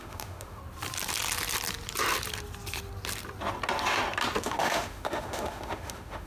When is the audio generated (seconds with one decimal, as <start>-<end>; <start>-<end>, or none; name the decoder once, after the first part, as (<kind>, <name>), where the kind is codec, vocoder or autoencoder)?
0.0-0.6 (autoencoder, DAC-VAE); 4.4-6.3